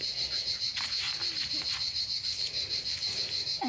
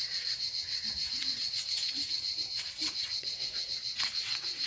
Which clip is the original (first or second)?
first